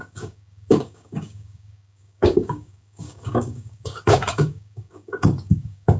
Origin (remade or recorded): remade